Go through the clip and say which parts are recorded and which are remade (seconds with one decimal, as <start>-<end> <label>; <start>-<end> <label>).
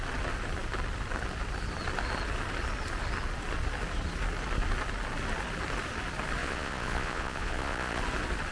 0.0-6.4 recorded; 6.4-8.0 remade; 8.0-8.5 recorded